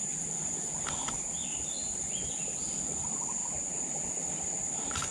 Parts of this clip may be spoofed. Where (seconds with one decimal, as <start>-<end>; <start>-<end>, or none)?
none